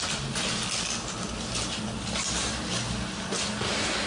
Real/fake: real